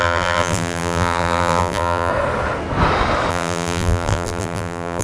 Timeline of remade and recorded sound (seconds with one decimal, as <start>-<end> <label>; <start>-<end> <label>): 0.0-2.1 remade; 2.1-3.3 recorded; 3.3-5.0 remade